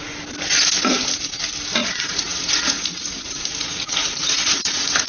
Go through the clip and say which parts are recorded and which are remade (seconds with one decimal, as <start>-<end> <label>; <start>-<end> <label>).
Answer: 0.0-1.8 recorded; 1.8-5.1 remade